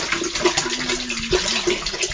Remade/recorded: recorded